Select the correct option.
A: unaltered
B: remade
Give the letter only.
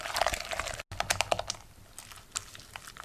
A